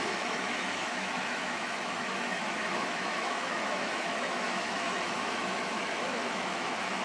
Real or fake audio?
fake